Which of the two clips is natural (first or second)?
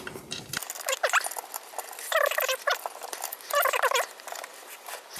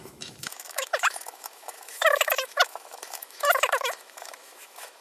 first